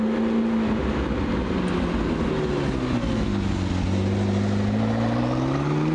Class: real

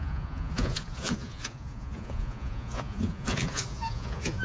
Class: fake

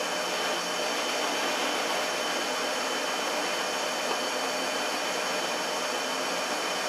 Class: real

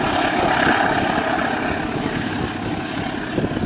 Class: real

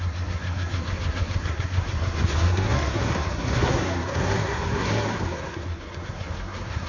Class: fake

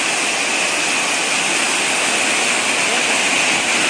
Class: real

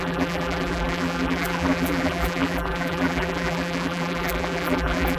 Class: fake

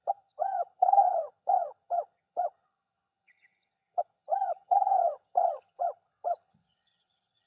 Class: fake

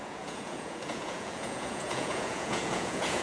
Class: fake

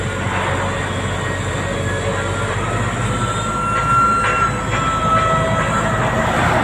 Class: real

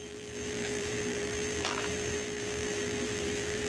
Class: fake